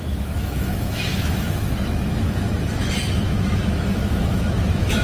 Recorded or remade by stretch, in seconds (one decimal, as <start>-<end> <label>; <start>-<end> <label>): 0.0-5.0 remade